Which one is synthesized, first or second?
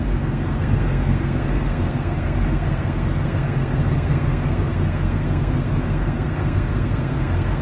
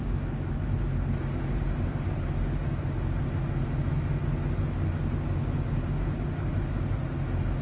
first